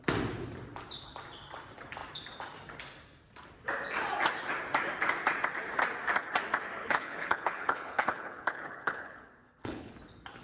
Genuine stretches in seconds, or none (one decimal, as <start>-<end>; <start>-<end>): 0.0-6.8; 9.9-10.4